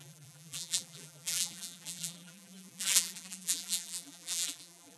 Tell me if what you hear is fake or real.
fake